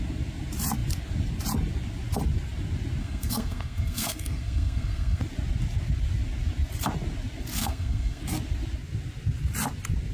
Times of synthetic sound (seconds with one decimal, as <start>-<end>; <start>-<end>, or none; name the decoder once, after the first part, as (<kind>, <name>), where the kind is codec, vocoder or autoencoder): 3.0-5.2 (codec, SNAC); 7.6-8.2